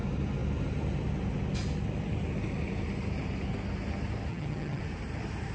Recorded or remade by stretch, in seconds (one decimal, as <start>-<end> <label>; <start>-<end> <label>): 0.0-4.3 recorded; 4.3-4.8 remade; 4.8-5.5 recorded